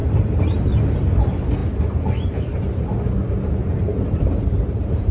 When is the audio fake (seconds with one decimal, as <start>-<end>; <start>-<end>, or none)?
0.0-0.8; 3.6-5.1